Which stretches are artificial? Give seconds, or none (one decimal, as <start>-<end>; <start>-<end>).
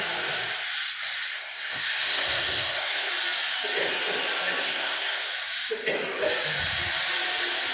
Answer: 1.3-3.1; 4.6-5.3